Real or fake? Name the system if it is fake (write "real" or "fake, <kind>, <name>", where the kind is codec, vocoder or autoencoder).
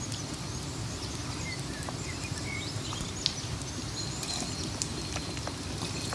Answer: real